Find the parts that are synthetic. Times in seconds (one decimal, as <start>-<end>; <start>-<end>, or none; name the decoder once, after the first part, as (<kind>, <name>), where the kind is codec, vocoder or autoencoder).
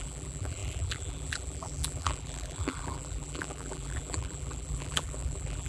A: 0.0-5.7 (vocoder, BigVGAN v2)